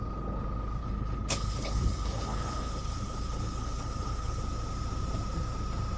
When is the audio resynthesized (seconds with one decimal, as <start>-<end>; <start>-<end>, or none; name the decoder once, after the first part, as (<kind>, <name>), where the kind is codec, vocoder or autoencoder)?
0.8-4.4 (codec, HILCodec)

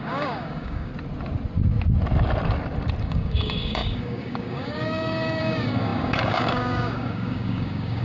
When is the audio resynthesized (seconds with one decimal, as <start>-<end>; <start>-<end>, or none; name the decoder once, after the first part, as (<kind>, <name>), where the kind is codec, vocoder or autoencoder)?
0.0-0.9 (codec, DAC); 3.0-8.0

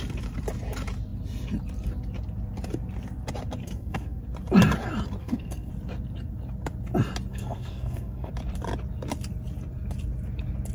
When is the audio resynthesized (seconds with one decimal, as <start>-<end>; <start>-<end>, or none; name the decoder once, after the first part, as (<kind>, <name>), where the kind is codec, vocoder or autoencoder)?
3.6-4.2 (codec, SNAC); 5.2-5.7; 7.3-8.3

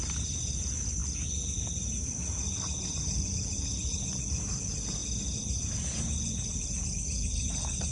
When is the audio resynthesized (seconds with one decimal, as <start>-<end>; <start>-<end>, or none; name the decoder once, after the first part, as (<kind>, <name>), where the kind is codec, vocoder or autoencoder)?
none

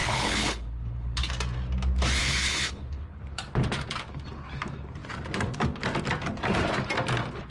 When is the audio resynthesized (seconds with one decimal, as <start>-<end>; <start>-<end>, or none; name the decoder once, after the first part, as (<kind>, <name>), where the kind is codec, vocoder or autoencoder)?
0.0-1.3 (codec, HILCodec); 2.2-3.2

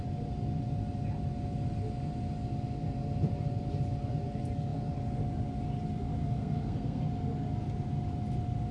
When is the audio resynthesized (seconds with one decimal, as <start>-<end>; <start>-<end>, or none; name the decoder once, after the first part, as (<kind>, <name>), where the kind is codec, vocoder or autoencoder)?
6.2-7.0 (codec, SNAC)